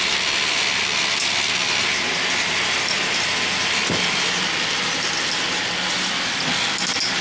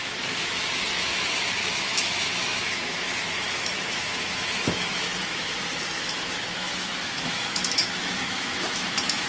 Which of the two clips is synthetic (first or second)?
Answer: second